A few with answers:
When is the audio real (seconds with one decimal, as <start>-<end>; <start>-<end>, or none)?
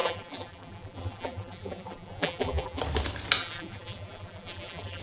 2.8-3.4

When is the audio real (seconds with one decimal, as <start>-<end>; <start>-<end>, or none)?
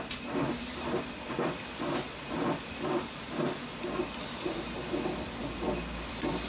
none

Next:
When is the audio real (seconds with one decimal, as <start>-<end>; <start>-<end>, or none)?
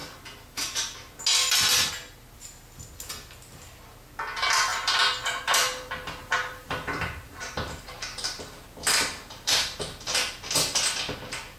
0.0-4.7; 9.8-11.6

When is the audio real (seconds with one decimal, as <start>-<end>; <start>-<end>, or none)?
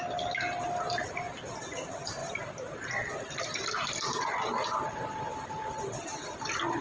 0.0-6.8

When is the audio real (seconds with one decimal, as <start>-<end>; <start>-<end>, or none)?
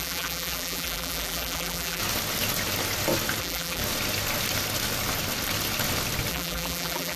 2.0-3.4; 3.8-6.3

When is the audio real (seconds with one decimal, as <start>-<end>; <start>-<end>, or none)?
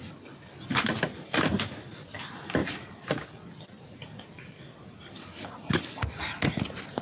0.0-7.0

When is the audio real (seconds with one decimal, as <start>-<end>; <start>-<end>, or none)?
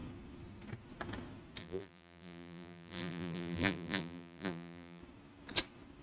0.0-1.6; 5.0-6.0